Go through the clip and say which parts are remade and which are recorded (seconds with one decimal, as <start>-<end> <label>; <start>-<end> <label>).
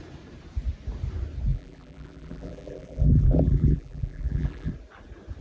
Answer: 0.0-1.5 recorded; 1.5-4.7 remade; 4.7-5.4 recorded